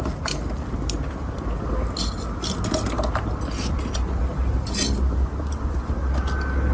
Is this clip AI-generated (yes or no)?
no